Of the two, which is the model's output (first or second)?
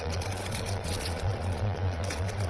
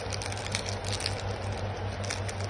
first